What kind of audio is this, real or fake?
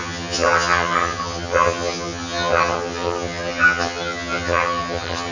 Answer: fake